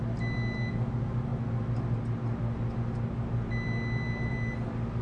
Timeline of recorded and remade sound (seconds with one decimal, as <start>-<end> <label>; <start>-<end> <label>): 0.0-5.0 recorded